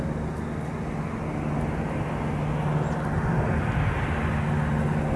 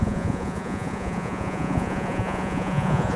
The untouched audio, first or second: first